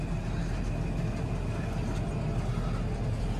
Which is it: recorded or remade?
recorded